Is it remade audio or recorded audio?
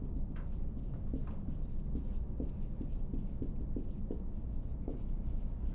recorded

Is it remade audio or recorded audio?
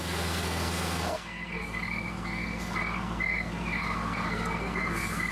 remade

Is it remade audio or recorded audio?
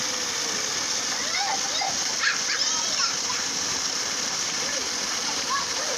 remade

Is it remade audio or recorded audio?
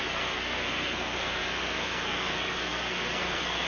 remade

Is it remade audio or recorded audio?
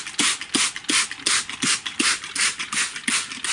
recorded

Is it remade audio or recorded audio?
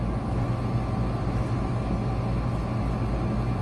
recorded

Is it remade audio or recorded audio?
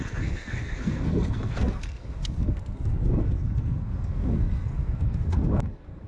remade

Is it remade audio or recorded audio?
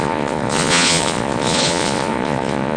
remade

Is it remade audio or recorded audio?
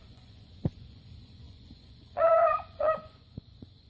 remade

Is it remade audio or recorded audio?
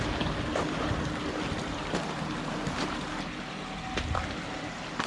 recorded